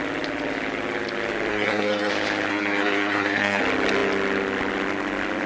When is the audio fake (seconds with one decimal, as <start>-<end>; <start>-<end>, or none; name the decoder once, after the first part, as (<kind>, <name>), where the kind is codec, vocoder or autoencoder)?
1.5-2.1 (codec, SNAC); 2.5-3.6